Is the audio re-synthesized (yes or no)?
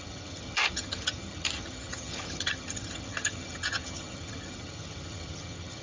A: yes